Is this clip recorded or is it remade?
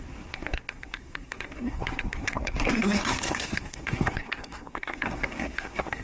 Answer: remade